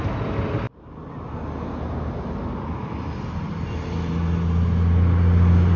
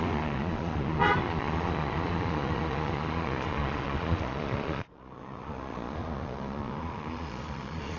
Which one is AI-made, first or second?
second